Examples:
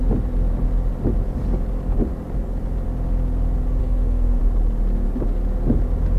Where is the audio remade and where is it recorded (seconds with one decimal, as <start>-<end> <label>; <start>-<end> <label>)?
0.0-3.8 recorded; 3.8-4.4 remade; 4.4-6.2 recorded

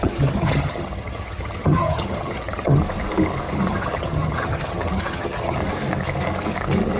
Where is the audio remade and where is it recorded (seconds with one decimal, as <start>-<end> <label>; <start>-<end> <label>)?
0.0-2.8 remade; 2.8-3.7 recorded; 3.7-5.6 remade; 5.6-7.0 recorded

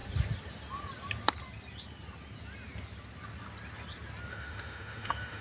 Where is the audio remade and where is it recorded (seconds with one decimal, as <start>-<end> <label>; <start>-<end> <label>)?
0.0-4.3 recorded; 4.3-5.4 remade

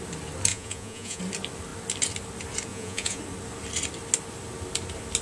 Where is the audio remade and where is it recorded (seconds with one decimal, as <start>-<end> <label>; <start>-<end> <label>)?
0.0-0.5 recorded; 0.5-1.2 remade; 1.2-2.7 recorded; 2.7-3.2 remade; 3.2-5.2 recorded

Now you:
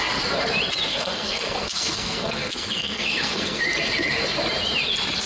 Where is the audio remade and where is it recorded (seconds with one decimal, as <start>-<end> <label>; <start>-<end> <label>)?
0.0-0.9 recorded; 0.9-3.6 remade; 3.6-5.3 recorded

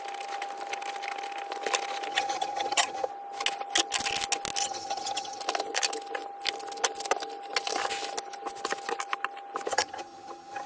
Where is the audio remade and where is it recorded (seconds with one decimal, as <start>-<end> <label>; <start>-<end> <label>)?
0.0-2.1 recorded; 2.1-3.1 remade; 3.1-4.6 recorded; 4.6-5.4 remade; 5.4-9.7 recorded; 9.7-10.7 remade

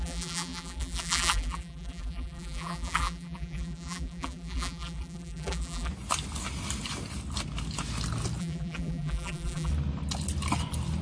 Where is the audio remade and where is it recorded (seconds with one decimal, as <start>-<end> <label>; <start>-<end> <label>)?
0.0-5.9 remade; 5.9-8.4 recorded; 8.4-9.7 remade; 9.7-11.0 recorded